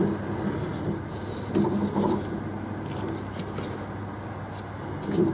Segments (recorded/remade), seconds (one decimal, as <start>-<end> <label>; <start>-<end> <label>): 0.0-5.3 recorded